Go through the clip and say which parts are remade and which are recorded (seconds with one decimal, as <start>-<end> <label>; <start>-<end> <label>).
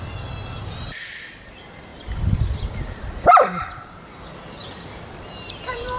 0.0-1.9 recorded; 1.9-4.2 remade; 4.2-6.0 recorded